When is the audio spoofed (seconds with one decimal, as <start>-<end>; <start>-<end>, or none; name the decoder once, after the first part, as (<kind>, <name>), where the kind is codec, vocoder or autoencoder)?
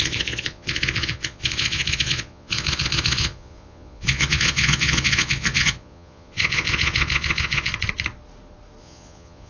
0.0-7.7 (vocoder, Vocos); 8.8-9.5